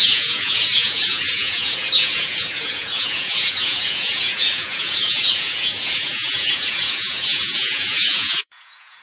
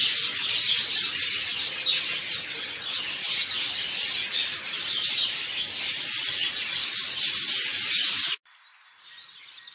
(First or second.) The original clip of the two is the second